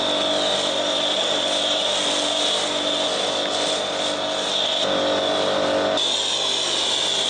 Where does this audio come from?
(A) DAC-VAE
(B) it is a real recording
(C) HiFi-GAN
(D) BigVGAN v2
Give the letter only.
B